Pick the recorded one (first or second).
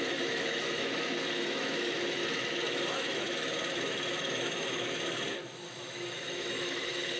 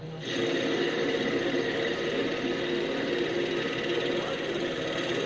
second